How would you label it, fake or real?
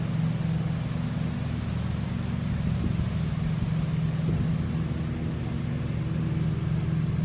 real